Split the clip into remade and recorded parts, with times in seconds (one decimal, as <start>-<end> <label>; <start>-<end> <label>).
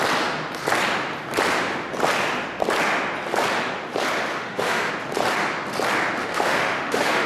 0.0-4.3 recorded; 4.3-4.9 remade; 4.9-6.2 recorded; 6.2-7.3 remade